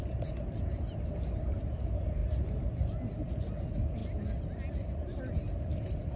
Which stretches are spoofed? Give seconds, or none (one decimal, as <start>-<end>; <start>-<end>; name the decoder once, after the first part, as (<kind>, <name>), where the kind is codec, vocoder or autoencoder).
none